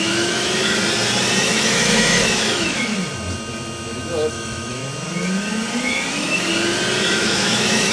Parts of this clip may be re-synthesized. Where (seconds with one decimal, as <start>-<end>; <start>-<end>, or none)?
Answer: 0.0-0.8; 1.4-2.9; 4.3-4.8; 6.1-6.5; 7.0-7.9